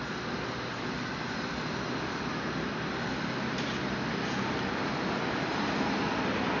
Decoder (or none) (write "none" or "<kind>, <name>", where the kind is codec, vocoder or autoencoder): none